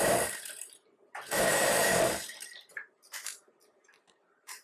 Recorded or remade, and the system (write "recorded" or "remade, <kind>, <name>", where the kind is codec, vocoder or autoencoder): remade, vocoder, BigVGAN v2